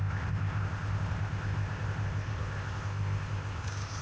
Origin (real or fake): fake